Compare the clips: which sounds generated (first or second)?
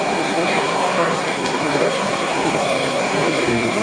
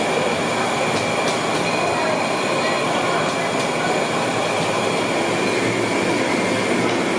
first